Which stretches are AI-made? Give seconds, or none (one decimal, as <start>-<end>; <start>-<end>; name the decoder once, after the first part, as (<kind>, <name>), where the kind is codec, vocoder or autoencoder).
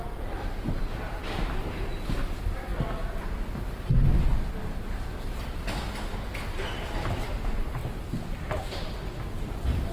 0.0-1.9 (vocoder, BigVGAN v2); 5.0-7.8; 8.8-9.9